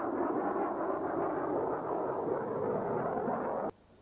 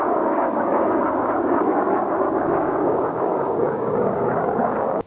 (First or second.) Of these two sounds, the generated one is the second